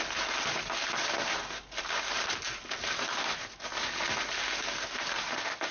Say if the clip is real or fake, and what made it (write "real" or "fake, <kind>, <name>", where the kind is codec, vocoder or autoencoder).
real